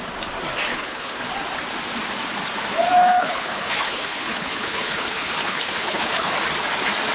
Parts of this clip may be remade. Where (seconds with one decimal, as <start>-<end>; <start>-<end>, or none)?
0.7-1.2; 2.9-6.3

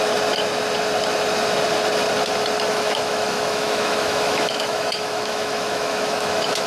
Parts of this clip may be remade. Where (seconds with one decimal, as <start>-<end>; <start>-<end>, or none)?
2.7-6.7

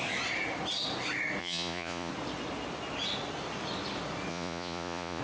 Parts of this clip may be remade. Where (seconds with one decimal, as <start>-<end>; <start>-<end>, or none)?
1.4-2.1; 4.3-5.2

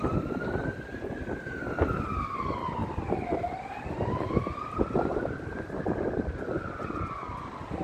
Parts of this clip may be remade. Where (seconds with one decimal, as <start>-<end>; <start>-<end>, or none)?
none